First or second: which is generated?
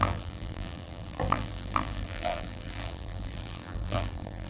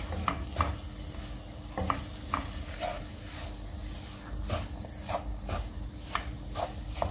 first